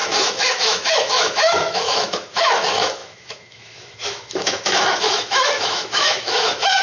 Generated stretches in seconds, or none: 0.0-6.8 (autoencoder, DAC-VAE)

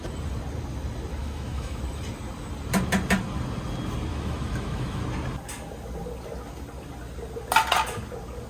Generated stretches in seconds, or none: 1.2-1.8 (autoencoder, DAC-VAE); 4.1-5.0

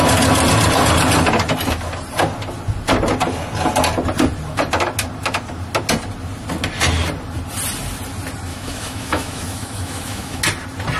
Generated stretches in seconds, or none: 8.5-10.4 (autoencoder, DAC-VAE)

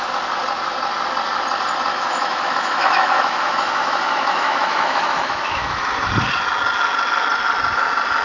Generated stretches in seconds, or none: 1.9-6.1 (autoencoder, DAC-VAE)

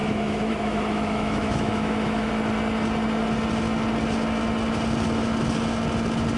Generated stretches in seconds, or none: 0.0-2.3 (autoencoder, DAC-VAE)

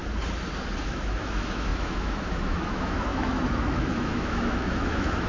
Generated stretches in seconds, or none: 0.8-5.3 (autoencoder, DAC-VAE)

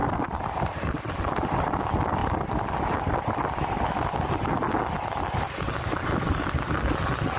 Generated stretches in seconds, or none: none

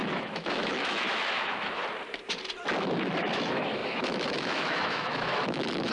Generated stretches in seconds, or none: 0.0-1.8 (autoencoder, DAC-VAE); 2.8-5.9